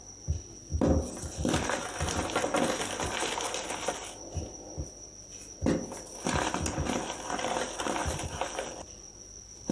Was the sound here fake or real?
real